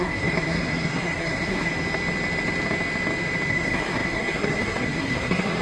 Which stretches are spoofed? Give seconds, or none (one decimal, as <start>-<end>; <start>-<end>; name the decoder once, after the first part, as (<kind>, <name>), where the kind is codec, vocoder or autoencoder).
0.0-1.7 (codec, SNAC); 3.5-5.6

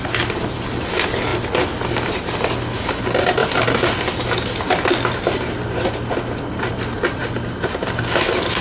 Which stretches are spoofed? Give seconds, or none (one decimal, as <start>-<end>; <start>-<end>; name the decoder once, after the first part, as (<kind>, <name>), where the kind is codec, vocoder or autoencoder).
none

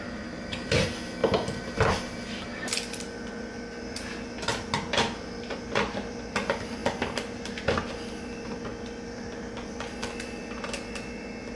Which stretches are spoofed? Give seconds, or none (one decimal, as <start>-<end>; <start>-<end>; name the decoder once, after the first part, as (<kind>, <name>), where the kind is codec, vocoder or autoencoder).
none

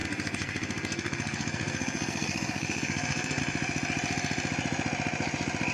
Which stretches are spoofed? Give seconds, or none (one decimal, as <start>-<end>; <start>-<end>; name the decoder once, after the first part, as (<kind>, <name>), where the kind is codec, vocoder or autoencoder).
0.0-3.4 (codec, SNAC)

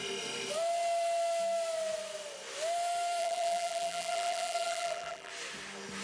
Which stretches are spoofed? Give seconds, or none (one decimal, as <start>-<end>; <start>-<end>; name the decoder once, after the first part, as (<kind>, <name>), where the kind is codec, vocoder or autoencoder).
3.2-5.3 (vocoder, BigVGAN v2)

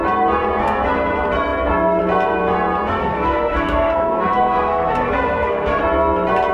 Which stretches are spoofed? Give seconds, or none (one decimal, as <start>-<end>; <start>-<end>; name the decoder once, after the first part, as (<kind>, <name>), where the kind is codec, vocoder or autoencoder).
3.0-5.8 (codec, SNAC)

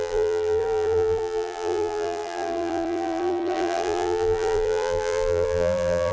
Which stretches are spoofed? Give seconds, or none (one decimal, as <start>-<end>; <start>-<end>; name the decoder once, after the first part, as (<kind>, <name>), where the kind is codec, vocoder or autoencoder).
0.0-6.1 (vocoder, BigVGAN v2)